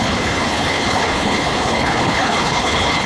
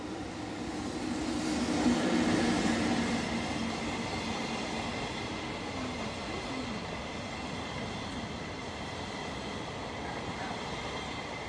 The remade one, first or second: first